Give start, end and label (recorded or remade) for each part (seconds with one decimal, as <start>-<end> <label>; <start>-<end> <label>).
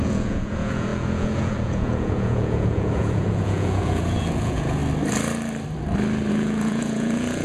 0.0-4.8 remade; 4.8-6.3 recorded; 6.3-7.4 remade